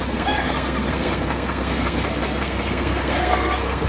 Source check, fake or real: fake